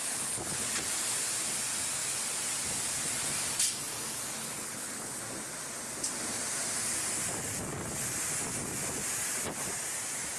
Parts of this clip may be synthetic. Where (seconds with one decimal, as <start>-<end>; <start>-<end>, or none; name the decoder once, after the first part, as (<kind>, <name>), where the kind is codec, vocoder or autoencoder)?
0.0-0.7 (codec, HILCodec); 4.4-5.2